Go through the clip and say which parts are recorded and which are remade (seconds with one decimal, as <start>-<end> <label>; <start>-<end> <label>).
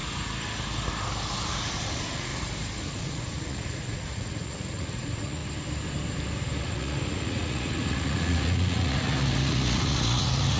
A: 0.0-1.5 recorded; 1.5-2.3 remade; 2.3-2.8 recorded; 2.8-5.4 remade; 5.4-6.6 recorded; 6.6-10.6 remade